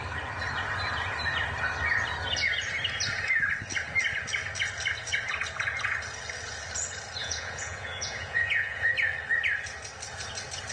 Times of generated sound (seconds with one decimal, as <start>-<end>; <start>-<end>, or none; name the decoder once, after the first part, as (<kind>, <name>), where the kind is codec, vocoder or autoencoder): 7.2-8.9 (vocoder, Vocos)